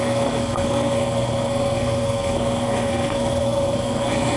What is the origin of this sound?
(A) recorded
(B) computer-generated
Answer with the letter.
B